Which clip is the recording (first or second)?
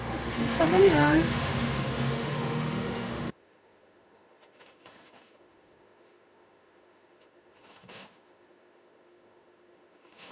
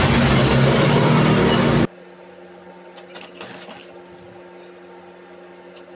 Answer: second